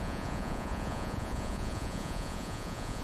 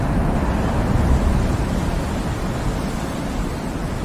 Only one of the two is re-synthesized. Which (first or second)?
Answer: first